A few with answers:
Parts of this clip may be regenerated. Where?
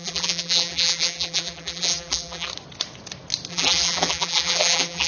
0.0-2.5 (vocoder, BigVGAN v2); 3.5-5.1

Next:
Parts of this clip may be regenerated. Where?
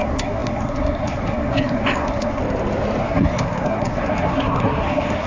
0.0-2.4 (codec, SNAC); 3.0-5.3